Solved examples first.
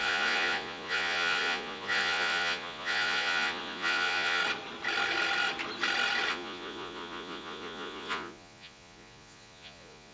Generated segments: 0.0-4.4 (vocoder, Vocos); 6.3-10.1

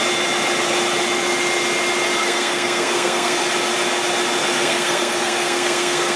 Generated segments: 2.2-3.4 (codec, SNAC); 4.4-6.2

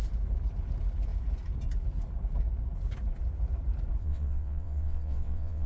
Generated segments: 4.0-5.7 (vocoder, WaveNeXt)

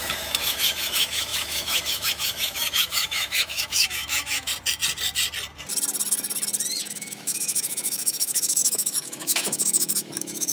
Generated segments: 0.0-4.5 (autoencoder, DAC-VAE); 6.8-10.5

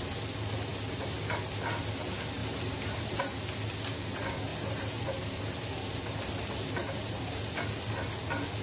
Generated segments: 2.4-3.2 (vocoder, BigVGAN v2); 4.5-5.4; 6.8-7.4